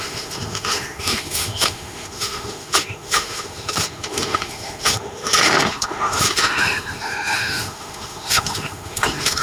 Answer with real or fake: fake